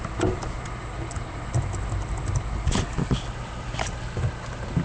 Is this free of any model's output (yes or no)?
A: yes